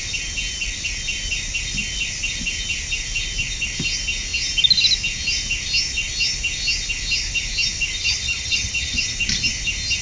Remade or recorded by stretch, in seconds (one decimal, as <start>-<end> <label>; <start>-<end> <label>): 0.0-8.0 recorded; 8.0-9.0 remade; 9.0-10.0 recorded